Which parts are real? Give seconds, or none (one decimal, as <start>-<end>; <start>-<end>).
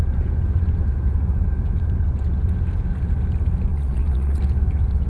0.0-3.7; 4.4-5.1